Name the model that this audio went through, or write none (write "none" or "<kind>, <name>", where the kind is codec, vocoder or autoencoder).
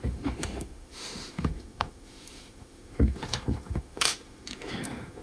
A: autoencoder, DAC-VAE